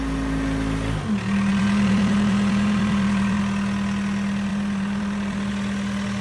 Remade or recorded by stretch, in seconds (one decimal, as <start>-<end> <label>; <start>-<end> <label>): 0.0-1.5 recorded; 1.5-3.4 remade; 3.4-4.5 recorded; 4.5-5.5 remade; 5.5-6.2 recorded